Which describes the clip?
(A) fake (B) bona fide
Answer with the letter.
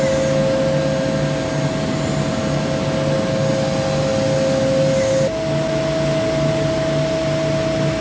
B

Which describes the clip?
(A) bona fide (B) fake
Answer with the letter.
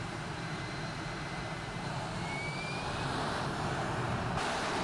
B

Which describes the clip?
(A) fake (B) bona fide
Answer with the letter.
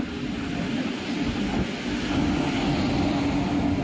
B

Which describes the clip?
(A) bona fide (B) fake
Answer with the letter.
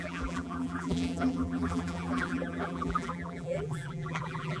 B